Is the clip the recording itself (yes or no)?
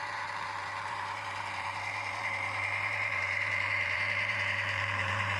no